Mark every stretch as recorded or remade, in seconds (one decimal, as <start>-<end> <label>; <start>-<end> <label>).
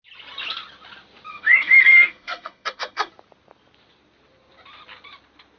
0.0-1.3 recorded; 1.3-3.1 remade; 3.1-5.6 recorded